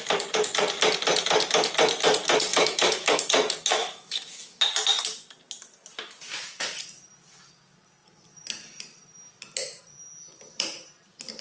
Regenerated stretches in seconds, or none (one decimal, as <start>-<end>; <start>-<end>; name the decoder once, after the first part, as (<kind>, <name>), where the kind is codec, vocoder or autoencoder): 2.5-3.2 (autoencoder, DAC-VAE); 3.8-4.6